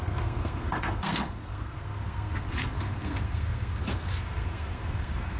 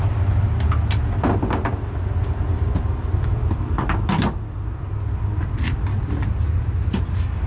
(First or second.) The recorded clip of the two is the second